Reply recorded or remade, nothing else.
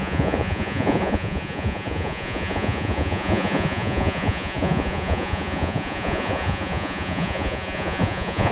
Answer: remade